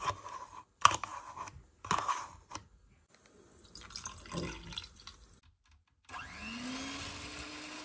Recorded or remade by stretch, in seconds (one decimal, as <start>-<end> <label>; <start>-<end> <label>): 0.0-7.8 recorded